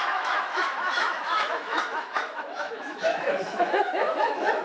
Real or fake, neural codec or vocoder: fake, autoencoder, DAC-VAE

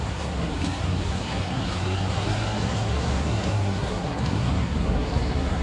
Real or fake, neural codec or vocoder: fake, codec, SNAC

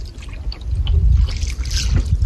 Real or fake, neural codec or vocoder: real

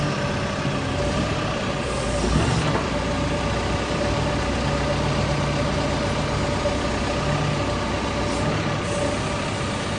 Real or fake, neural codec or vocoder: real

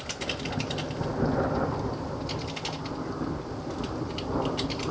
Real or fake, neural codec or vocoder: real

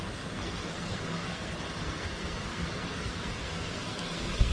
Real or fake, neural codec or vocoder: fake, codec, SNAC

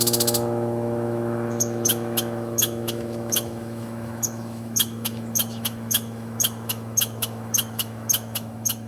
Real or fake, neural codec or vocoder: fake, autoencoder, DAC-VAE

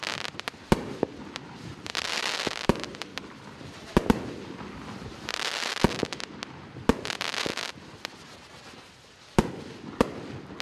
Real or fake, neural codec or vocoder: real